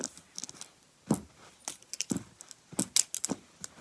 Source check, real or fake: real